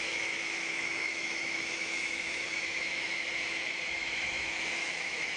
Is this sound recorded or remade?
remade